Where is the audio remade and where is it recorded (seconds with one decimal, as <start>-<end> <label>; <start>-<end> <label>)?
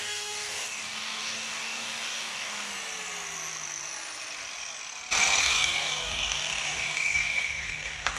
0.0-2.7 remade; 2.7-5.4 recorded; 5.4-8.2 remade